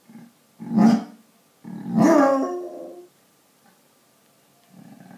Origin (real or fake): real